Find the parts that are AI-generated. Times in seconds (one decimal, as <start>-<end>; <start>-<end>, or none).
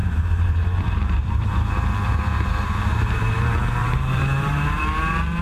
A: 0.0-3.2; 3.8-4.8